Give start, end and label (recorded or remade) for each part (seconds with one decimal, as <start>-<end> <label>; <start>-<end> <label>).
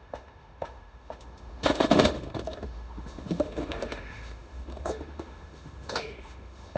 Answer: 0.0-6.8 remade